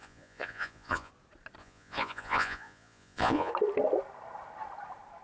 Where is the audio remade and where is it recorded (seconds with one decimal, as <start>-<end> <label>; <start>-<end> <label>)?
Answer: 0.0-1.1 remade; 1.1-1.6 recorded; 1.6-3.5 remade; 3.5-5.2 recorded